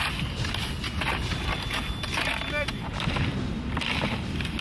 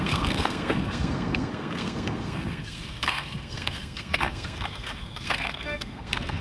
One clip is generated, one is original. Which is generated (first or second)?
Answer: second